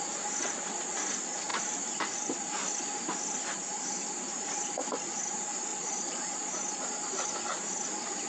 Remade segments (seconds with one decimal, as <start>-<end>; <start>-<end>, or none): 5.7-7.1